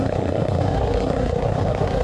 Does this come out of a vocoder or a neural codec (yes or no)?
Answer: yes